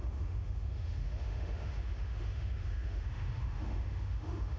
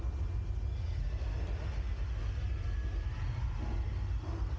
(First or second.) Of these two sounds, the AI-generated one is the first